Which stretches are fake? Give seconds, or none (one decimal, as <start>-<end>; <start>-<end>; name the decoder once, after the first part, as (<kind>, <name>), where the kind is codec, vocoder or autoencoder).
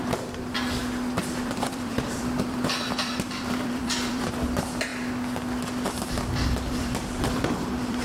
0.0-0.8 (vocoder, BigVGAN v2); 1.4-4.9; 6.7-8.0